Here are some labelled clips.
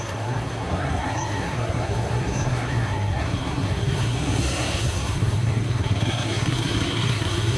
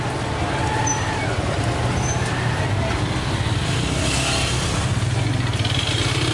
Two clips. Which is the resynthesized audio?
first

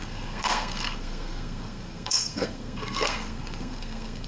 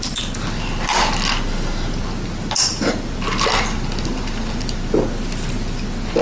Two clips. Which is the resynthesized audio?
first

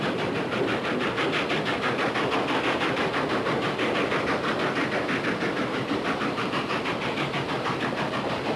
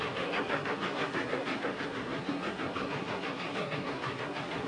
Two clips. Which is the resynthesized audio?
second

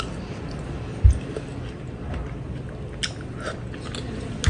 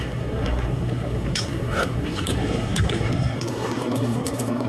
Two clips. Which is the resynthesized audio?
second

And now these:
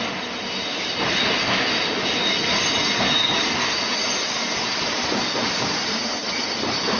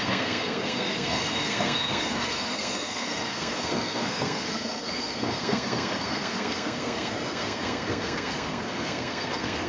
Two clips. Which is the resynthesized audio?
second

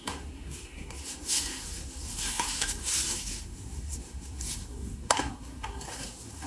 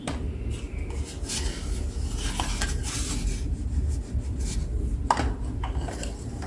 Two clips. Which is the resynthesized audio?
first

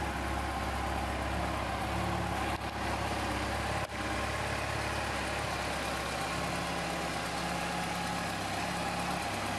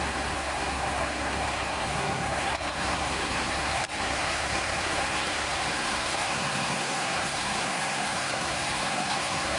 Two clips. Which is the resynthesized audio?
second